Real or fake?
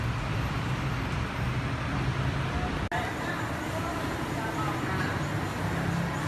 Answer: real